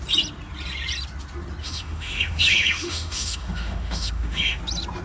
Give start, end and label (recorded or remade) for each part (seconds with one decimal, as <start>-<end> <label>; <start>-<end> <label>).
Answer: 0.0-1.6 recorded; 1.6-4.6 remade; 4.6-5.0 recorded